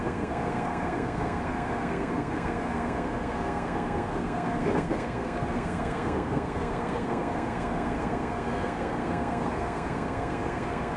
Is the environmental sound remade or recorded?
remade